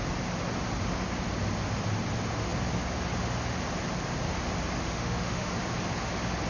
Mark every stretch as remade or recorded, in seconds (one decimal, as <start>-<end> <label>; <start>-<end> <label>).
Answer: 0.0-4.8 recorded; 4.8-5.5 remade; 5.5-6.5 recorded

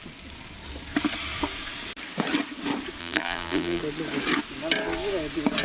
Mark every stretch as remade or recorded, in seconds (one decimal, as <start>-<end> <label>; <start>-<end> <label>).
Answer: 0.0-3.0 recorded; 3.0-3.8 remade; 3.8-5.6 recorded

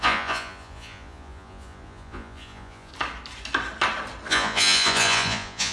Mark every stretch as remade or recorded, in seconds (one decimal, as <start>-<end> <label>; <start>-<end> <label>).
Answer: 0.0-2.9 remade; 2.9-4.3 recorded; 4.3-5.7 remade